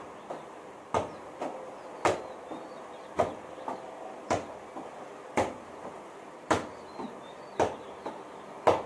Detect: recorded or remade recorded